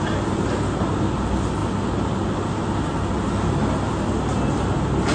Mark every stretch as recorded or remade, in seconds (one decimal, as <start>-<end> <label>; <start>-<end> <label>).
0.0-5.1 recorded